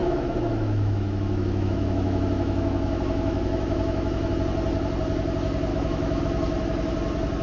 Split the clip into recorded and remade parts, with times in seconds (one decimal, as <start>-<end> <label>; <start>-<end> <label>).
0.0-4.3 remade; 4.3-5.7 recorded; 5.7-6.2 remade; 6.2-7.4 recorded